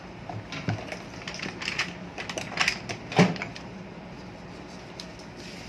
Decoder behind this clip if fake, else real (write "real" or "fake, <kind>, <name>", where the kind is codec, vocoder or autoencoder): real